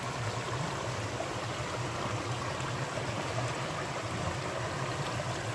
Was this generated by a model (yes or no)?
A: no